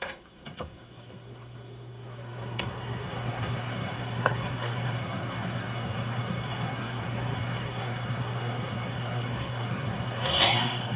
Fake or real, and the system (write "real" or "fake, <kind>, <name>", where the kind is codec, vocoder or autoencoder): fake, codec, SNAC